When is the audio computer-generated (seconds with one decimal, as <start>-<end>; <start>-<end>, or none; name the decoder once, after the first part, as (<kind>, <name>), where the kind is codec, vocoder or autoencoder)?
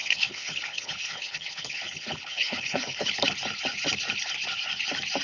0.0-3.1 (codec, HILCodec)